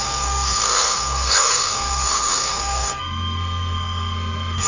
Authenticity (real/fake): fake